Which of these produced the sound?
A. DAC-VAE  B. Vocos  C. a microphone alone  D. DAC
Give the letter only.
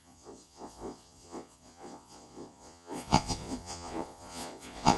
B